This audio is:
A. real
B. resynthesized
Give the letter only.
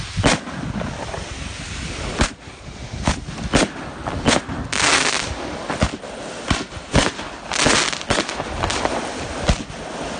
A